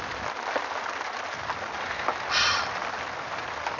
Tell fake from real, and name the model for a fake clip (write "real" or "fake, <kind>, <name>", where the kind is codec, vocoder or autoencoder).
real